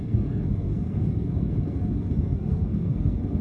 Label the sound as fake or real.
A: fake